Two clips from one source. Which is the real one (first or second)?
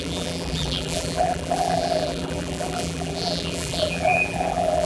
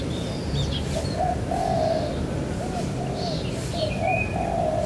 second